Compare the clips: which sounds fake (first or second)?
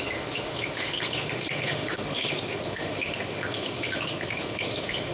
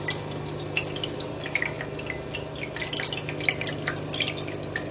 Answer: first